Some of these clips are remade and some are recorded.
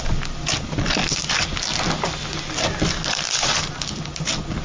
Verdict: recorded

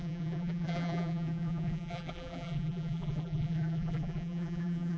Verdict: remade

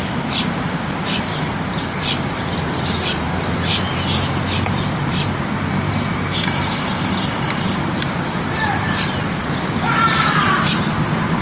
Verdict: remade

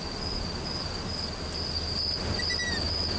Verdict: recorded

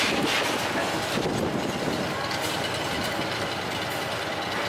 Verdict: recorded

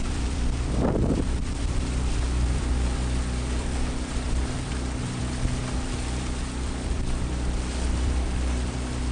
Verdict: remade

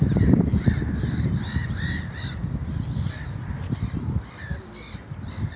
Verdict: recorded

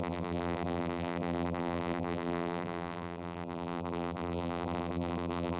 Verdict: remade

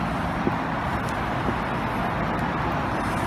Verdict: recorded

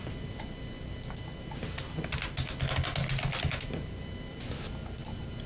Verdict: recorded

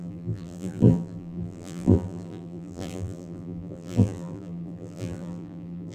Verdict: remade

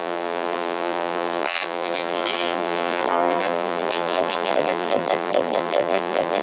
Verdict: remade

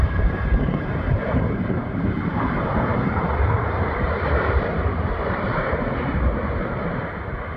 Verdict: remade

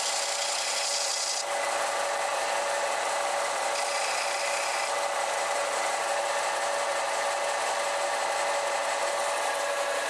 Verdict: recorded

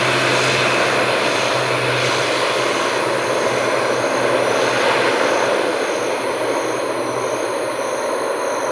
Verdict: recorded